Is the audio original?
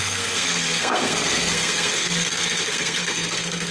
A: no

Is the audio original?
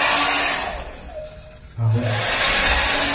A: yes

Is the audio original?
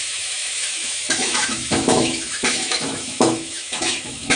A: no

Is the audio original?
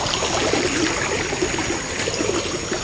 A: yes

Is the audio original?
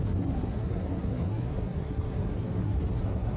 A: no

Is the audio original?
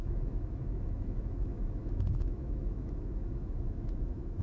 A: no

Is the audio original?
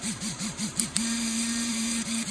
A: no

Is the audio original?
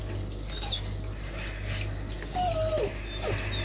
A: yes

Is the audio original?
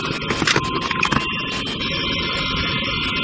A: yes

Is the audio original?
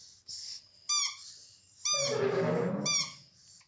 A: yes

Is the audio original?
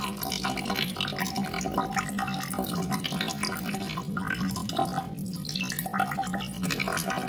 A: yes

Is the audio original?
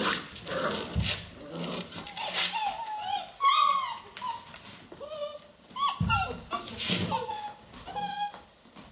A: yes